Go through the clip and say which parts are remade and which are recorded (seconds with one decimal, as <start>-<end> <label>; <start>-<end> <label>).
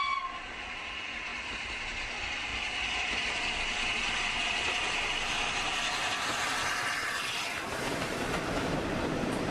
0.0-1.3 recorded; 1.3-1.8 remade; 1.8-9.5 recorded